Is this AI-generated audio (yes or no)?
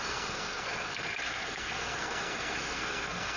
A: yes